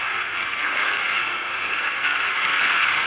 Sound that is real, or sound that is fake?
fake